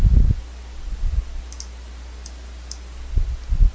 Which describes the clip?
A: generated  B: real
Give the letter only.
B